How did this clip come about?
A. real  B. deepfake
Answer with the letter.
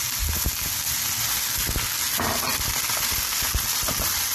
A